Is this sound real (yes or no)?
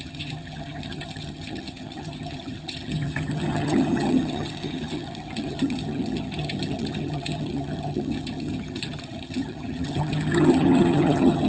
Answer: no